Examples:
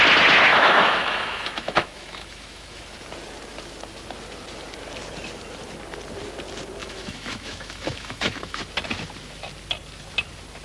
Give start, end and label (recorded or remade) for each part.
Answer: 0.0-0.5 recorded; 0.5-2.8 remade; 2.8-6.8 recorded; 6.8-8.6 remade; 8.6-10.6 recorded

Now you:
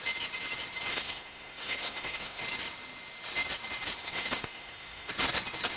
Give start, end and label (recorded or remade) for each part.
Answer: 0.0-0.9 recorded; 0.9-2.4 remade; 2.4-4.0 recorded; 4.0-5.1 remade; 5.1-5.8 recorded

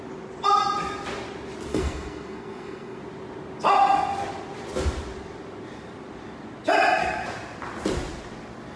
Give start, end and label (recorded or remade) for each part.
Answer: 0.0-1.7 recorded; 1.7-3.0 remade; 3.0-8.8 recorded